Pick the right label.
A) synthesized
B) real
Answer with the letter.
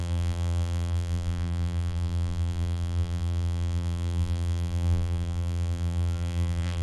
A